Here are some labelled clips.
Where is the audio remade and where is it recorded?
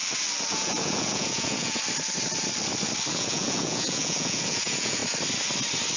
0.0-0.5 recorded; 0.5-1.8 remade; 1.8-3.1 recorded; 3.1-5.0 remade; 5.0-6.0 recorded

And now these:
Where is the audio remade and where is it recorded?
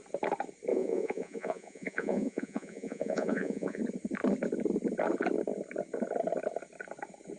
0.0-0.7 recorded; 0.7-3.8 remade; 3.8-7.4 recorded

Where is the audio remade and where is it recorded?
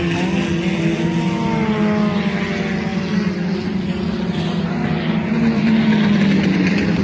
0.0-7.0 recorded